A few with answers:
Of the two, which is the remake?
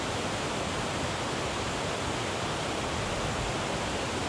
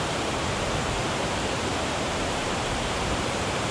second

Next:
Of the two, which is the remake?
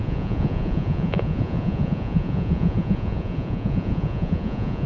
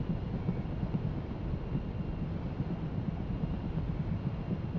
first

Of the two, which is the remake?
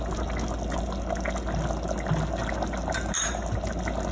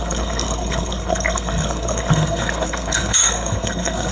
second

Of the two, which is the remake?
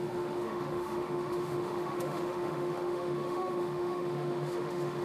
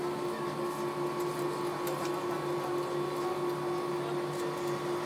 first